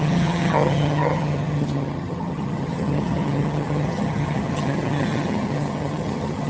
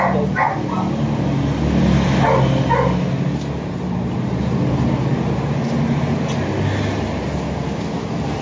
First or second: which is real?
second